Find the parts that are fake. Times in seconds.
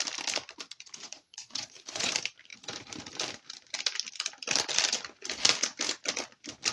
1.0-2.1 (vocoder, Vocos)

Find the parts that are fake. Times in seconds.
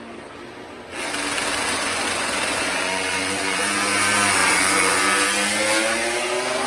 1.8-3.6 (vocoder, Vocos); 4.4-5.0